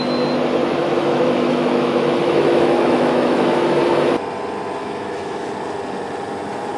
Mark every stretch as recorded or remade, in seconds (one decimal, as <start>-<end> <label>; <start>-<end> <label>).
0.0-0.8 recorded; 0.8-3.8 remade; 3.8-4.8 recorded; 4.8-5.5 remade; 5.5-6.8 recorded